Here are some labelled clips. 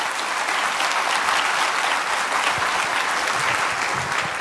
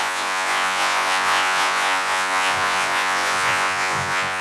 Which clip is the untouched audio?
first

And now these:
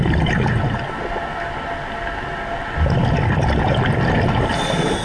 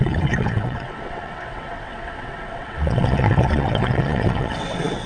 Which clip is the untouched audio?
first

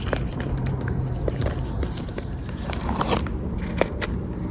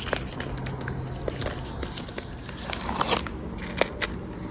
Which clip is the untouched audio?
second